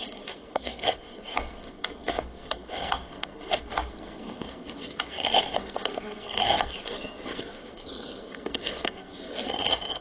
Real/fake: fake